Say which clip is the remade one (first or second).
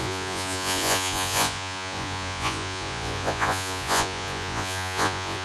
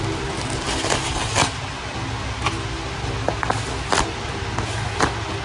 first